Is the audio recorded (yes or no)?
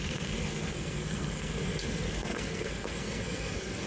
no